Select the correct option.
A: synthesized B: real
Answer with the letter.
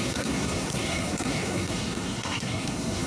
A